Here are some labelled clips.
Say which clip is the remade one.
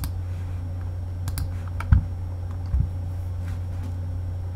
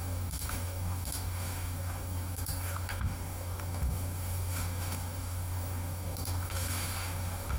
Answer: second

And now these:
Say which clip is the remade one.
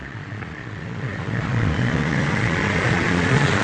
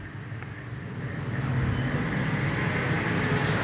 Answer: first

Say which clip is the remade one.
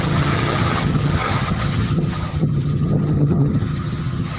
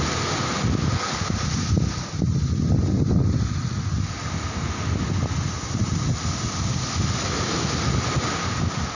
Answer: first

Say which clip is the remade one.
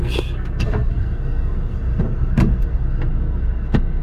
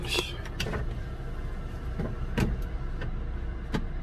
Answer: first